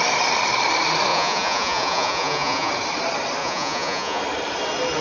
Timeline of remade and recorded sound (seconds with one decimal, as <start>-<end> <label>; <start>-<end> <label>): 0.0-1.1 recorded; 1.1-2.7 remade; 2.7-3.4 recorded; 3.4-4.2 remade; 4.2-5.0 recorded